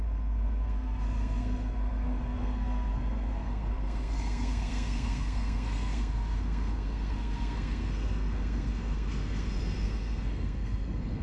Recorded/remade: remade